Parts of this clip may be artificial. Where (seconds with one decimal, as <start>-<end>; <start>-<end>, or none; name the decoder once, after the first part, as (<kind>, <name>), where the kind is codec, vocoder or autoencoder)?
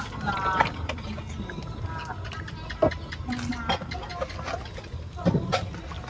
none